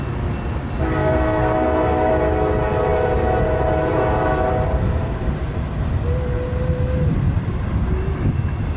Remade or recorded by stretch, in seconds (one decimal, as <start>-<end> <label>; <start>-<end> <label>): 0.0-1.0 recorded; 1.0-2.1 remade; 2.1-8.8 recorded